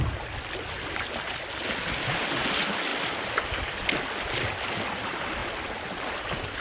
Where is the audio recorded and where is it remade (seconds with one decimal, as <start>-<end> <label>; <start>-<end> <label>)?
0.0-6.6 recorded